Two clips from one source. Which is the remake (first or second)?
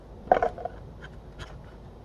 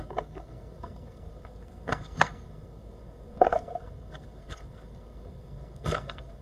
second